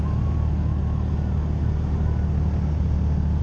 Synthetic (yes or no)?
no